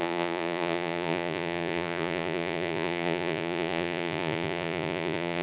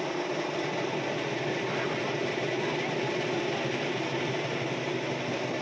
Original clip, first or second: second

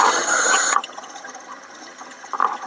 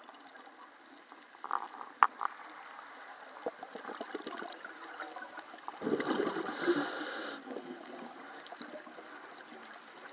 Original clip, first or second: second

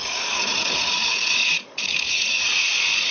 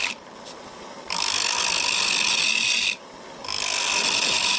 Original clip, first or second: second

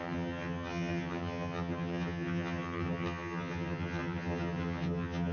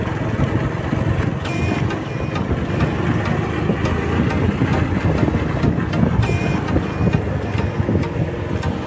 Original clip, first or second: second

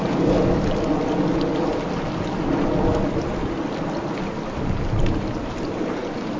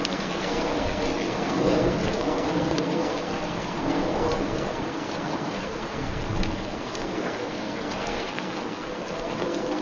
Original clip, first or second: first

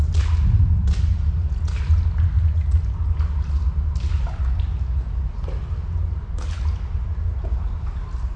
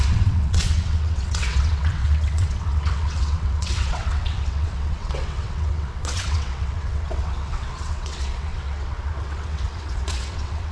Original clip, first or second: first